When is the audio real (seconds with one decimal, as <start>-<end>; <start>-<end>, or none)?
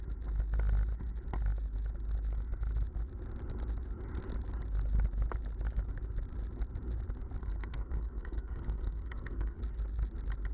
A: 0.0-7.4; 9.6-10.5